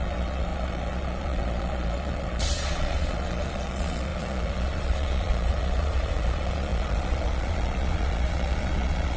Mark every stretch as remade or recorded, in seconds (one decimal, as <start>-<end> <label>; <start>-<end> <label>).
0.0-9.2 remade